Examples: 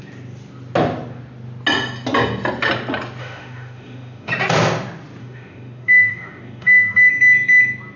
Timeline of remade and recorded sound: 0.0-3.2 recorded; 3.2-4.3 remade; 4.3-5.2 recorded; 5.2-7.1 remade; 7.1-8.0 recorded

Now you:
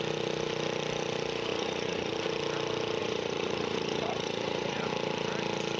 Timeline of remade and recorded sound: 0.0-1.5 recorded; 1.5-2.1 remade; 2.1-3.0 recorded; 3.0-4.9 remade; 4.9-5.8 recorded

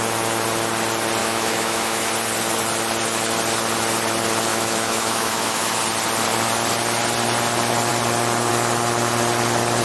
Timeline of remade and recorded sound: 0.0-1.2 recorded; 1.2-2.1 remade; 2.1-4.5 recorded; 4.5-5.8 remade; 5.8-9.8 recorded

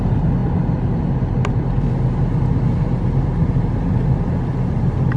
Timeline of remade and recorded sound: 0.0-5.2 recorded

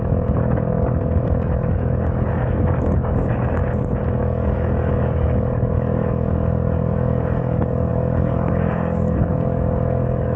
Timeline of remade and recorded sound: 0.0-3.6 remade; 3.6-4.2 recorded; 4.2-10.4 remade